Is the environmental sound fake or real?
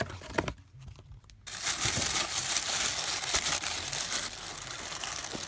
real